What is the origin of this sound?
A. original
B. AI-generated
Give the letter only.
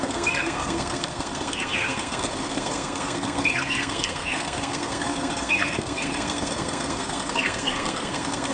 B